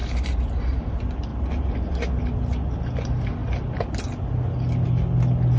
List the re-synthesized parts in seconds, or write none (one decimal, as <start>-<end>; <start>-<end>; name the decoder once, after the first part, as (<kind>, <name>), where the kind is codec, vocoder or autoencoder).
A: 0.0-0.6 (vocoder, BigVGAN v2); 1.3-1.9; 3.4-4.0